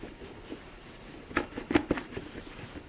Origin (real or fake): real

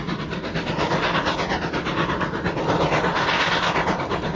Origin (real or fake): real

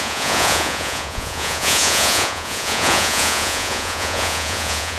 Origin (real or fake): fake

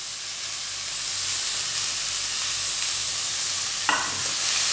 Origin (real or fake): real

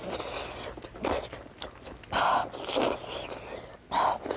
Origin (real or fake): real